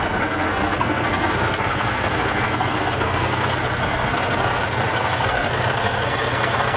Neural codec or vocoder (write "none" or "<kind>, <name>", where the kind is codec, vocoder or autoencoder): codec, SNAC